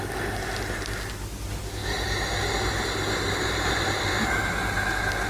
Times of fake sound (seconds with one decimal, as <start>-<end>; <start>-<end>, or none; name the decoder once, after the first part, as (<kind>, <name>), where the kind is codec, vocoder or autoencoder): none